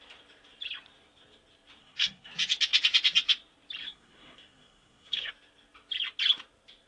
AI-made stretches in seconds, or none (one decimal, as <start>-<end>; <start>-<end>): 1.8-2.3; 3.8-5.3